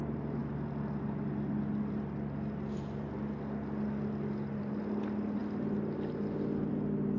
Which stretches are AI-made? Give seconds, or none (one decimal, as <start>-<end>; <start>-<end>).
none